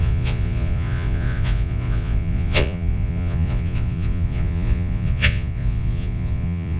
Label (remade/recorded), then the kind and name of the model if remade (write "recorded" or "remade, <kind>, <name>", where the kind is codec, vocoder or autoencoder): remade, vocoder, Vocos